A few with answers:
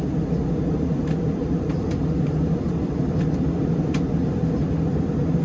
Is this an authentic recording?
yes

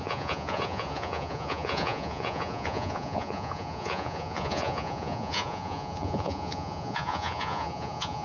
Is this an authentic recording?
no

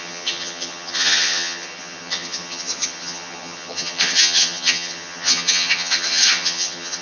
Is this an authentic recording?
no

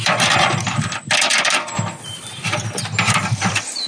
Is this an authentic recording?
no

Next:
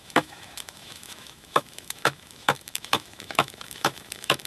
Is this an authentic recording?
no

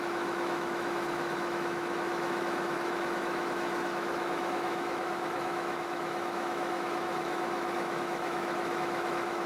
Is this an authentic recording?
no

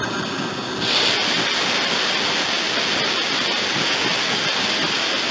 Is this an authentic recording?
yes